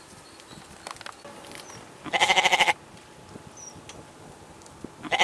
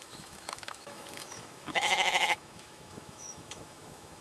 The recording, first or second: first